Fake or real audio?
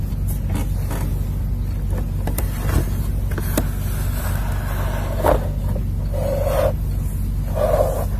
real